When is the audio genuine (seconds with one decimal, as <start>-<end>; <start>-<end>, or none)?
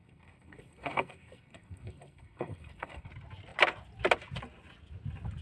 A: 3.1-5.4